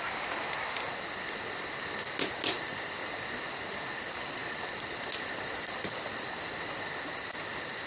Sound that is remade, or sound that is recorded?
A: recorded